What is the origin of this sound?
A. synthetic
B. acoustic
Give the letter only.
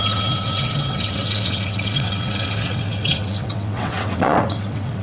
A